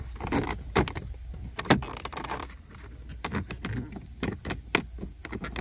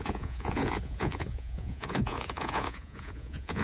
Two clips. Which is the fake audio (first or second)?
second